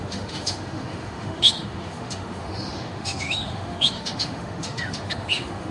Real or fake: fake